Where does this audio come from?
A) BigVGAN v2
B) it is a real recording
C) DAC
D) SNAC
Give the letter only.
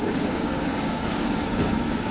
C